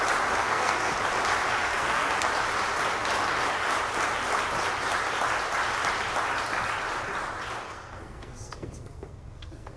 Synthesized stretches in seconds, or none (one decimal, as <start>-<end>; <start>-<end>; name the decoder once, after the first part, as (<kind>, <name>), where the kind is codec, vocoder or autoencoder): 0.4-0.9 (codec, SNAC); 1.6-2.3; 7.6-9.8